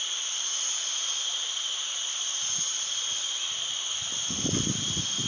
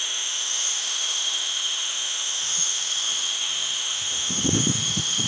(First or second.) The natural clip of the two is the first